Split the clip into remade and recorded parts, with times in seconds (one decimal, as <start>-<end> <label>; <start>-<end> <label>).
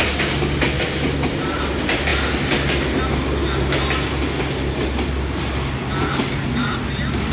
0.0-7.3 recorded